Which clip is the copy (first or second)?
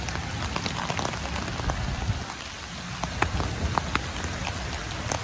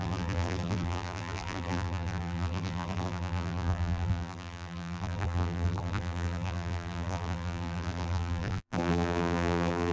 second